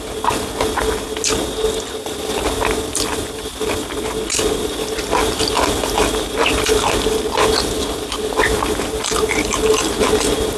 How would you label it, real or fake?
real